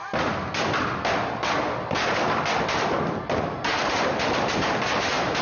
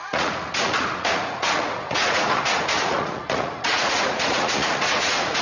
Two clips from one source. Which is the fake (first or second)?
second